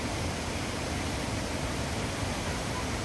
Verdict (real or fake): real